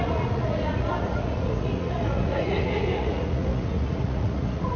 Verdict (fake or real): fake